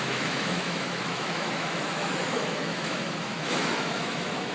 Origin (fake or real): fake